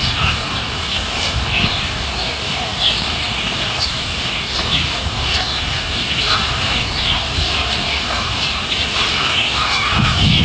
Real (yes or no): no